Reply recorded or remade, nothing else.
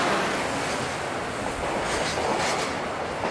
recorded